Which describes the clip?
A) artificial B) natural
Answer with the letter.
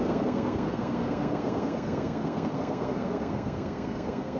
A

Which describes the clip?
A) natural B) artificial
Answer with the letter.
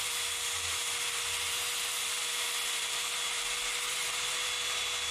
B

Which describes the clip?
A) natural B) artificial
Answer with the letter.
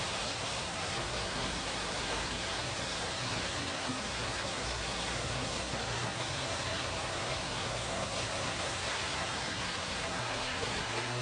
B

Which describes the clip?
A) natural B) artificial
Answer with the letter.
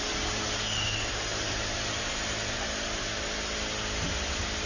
A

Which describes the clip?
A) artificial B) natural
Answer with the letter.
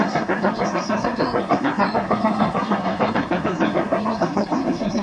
A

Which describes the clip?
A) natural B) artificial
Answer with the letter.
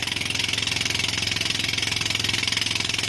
A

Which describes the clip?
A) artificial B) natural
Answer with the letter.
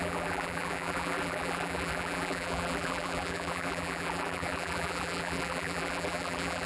A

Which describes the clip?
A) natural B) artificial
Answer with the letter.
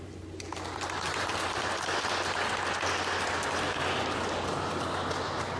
A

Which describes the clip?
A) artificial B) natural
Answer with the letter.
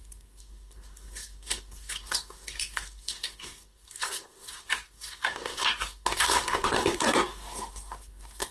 A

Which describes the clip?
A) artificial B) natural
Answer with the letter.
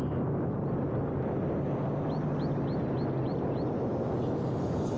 B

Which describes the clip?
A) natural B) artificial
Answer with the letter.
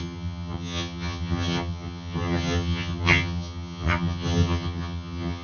B